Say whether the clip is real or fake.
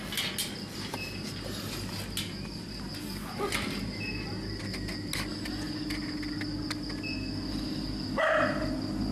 real